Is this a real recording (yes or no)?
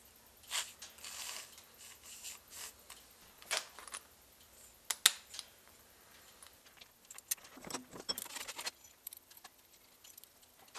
yes